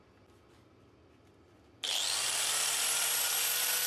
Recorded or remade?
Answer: recorded